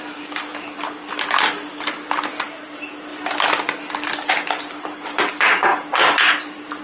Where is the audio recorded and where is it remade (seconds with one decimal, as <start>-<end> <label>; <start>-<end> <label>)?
0.0-6.8 recorded